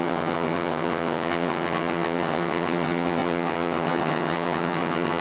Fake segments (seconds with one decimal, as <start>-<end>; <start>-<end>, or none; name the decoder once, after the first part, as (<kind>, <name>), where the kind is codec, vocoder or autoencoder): 0.0-5.2 (vocoder, HiFi-GAN)